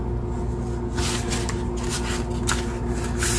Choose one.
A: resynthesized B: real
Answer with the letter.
B